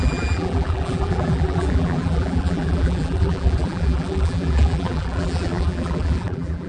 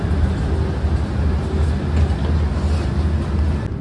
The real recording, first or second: second